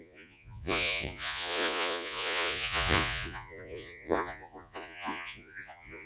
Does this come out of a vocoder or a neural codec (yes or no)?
yes